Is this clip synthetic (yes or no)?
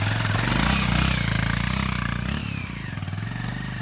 no